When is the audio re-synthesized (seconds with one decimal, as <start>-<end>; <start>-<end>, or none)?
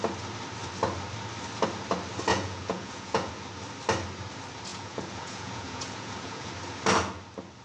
2.3-3.3; 4.7-6.5